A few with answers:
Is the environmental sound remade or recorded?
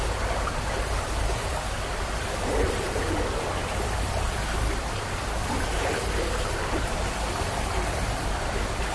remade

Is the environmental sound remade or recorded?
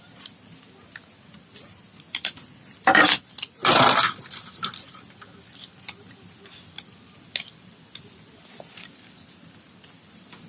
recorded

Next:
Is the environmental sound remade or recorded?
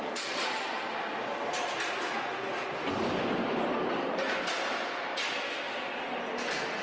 recorded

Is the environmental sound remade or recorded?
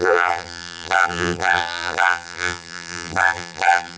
remade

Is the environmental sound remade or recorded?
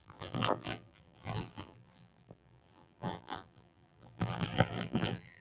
remade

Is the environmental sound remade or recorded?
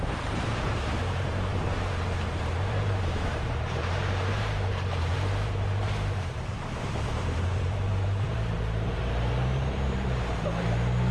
remade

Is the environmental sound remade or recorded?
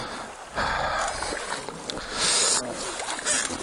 recorded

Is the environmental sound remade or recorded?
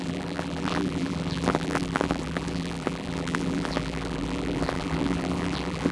remade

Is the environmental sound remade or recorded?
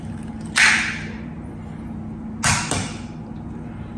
recorded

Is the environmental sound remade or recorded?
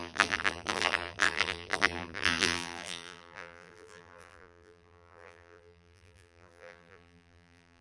remade